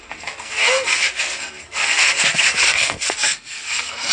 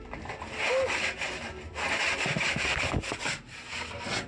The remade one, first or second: first